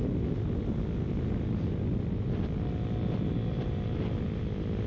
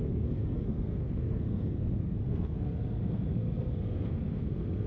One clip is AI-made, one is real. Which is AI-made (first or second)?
second